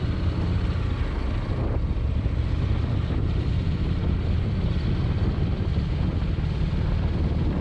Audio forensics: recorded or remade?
remade